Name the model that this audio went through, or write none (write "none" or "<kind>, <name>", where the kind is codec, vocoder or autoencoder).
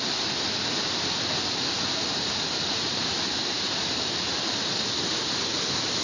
none